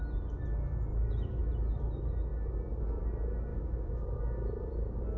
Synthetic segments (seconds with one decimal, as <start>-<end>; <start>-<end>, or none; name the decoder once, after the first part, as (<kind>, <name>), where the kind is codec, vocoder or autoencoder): 0.9-1.4 (autoencoder, DAC-VAE); 3.5-4.2

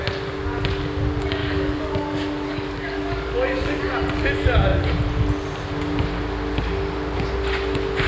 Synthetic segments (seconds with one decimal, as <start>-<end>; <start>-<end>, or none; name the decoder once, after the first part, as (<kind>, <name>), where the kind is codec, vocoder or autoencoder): 1.4-3.8 (codec, DAC)